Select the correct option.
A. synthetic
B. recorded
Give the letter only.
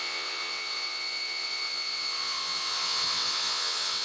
A